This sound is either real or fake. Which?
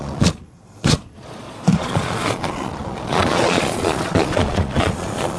fake